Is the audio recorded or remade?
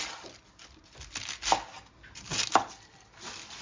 recorded